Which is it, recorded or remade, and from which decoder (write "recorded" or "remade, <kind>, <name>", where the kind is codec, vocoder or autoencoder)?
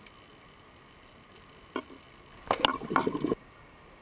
recorded